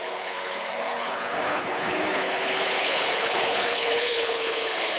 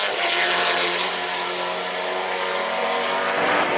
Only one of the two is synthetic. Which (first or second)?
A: first